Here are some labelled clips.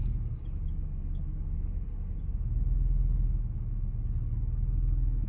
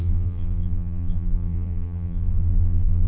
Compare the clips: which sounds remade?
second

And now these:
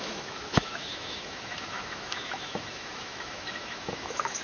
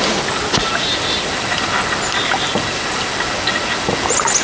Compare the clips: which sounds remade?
first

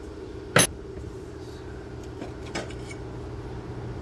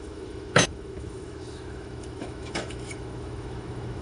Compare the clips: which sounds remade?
second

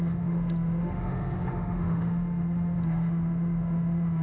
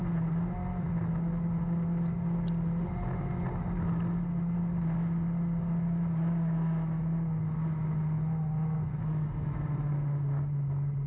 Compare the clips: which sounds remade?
first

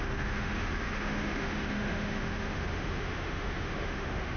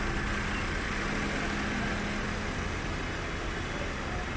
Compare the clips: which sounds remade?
first